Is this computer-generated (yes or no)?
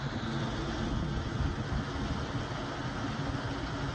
no